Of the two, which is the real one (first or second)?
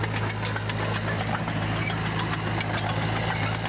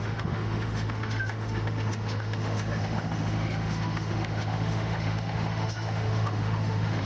first